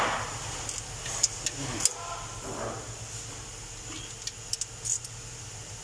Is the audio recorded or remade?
recorded